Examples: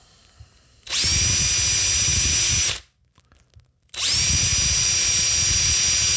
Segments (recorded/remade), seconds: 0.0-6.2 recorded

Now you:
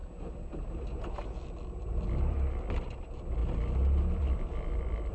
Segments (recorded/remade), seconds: 0.0-2.3 recorded; 2.3-3.4 remade; 3.4-4.1 recorded; 4.1-5.1 remade

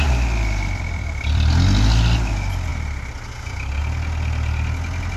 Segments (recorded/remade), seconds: 0.0-1.5 remade; 1.5-5.2 recorded

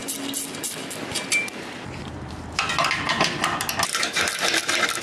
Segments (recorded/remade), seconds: 0.0-1.0 recorded; 1.0-5.0 remade

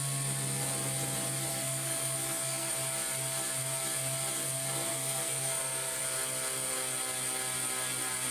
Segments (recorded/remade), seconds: 0.0-1.5 recorded; 1.5-2.7 remade; 2.7-4.9 recorded; 4.9-6.0 remade; 6.0-8.3 recorded